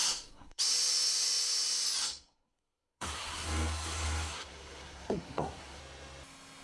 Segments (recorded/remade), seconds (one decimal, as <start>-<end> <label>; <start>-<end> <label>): 0.0-0.6 remade; 0.6-2.0 recorded; 2.0-5.8 remade; 5.8-6.6 recorded